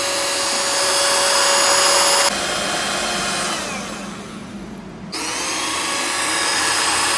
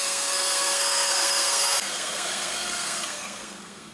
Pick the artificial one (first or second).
second